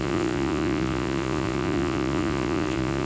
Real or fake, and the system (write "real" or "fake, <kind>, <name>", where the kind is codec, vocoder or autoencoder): fake, vocoder, Vocos